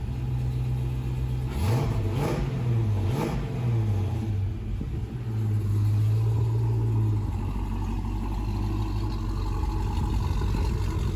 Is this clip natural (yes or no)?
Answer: yes